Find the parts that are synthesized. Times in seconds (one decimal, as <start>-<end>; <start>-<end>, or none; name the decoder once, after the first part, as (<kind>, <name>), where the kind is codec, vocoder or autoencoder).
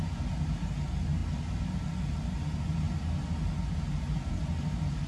none